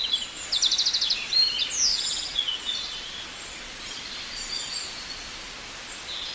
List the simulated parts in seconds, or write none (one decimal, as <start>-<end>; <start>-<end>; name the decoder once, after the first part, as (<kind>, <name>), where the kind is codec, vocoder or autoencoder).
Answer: 1.9-4.0 (vocoder, Vocos)